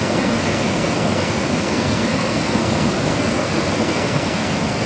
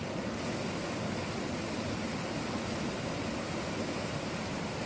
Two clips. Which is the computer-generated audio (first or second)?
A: first